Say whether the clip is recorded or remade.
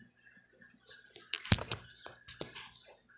recorded